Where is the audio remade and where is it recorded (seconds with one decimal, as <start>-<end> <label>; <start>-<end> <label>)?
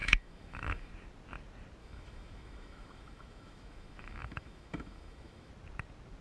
0.0-0.9 remade; 0.9-1.8 recorded; 1.8-5.5 remade; 5.5-6.2 recorded